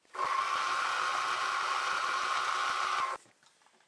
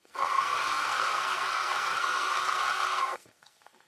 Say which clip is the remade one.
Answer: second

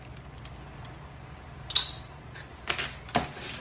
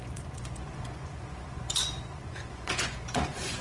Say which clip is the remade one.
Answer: second